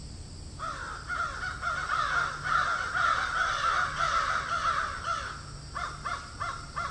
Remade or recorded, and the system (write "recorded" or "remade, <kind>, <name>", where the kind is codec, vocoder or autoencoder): recorded